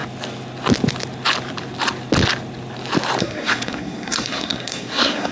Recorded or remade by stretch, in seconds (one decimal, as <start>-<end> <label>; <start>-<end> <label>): 0.0-3.2 recorded; 3.2-5.3 remade